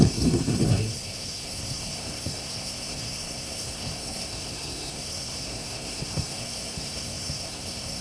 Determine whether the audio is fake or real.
fake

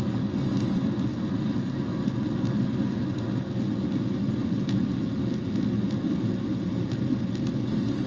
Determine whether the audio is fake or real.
real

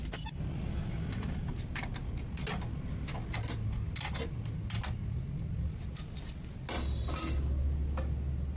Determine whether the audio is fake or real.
real